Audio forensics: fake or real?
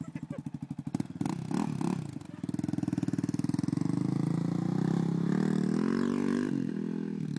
real